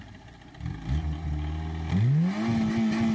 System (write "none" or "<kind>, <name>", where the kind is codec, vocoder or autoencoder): none